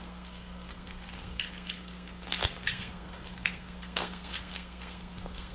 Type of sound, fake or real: fake